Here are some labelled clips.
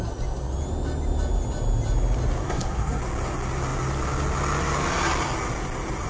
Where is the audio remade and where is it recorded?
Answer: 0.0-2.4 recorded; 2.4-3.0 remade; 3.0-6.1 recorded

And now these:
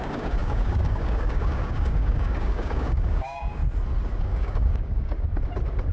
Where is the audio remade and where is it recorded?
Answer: 0.0-3.6 remade; 3.6-4.2 recorded; 4.2-5.3 remade; 5.3-5.9 recorded

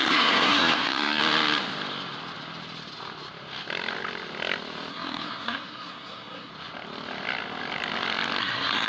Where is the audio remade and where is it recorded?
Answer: 0.0-1.2 remade; 1.2-4.9 recorded; 4.9-6.5 remade; 6.5-8.4 recorded; 8.4-8.9 remade

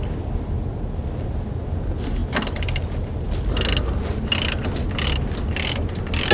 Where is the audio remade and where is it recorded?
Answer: 0.0-6.3 recorded

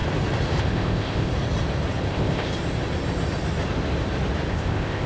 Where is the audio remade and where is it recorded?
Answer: 0.0-0.6 recorded; 0.6-1.3 remade; 1.3-2.1 recorded; 2.1-2.5 remade; 2.5-4.5 recorded; 4.5-5.1 remade

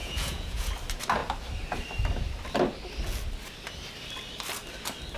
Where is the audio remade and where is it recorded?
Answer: 0.0-0.7 remade; 0.7-5.2 recorded